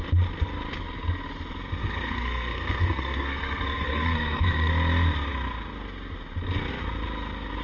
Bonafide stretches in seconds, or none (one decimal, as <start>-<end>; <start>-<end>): 0.0-1.8; 4.7-7.6